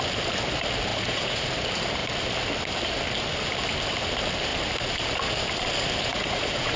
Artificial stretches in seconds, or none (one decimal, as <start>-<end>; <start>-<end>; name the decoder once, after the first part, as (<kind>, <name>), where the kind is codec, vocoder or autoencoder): 0.9-1.5 (vocoder, Vocos); 6.1-6.8